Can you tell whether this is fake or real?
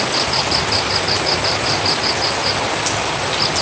real